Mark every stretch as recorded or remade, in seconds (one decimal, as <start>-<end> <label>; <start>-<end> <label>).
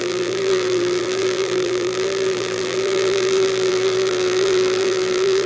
0.0-5.5 remade